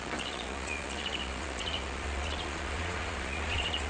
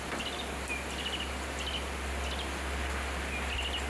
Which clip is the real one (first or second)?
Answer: second